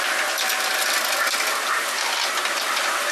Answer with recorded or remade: recorded